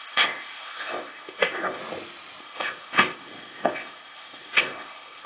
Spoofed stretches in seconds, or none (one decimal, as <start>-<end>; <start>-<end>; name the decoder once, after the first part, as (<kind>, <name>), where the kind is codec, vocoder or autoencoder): 0.0-1.8 (codec, ZipCodec); 2.4-5.3